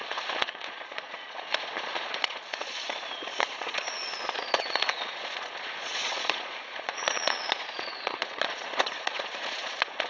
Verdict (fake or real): fake